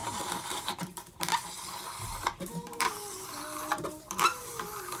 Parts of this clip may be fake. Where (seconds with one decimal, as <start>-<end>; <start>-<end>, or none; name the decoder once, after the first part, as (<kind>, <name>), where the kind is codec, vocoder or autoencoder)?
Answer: 0.0-1.3 (vocoder, BigVGAN v2); 2.1-3.3; 3.7-4.5